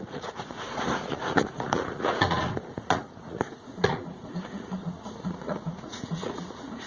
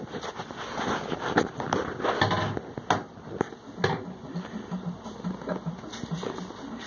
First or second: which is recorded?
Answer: second